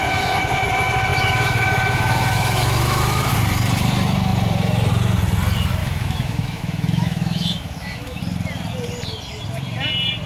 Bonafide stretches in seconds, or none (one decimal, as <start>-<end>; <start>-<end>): 0.0-1.1; 3.3-5.8; 8.2-10.3